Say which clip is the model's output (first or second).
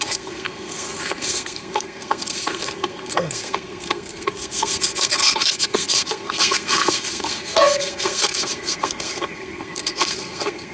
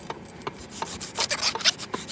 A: first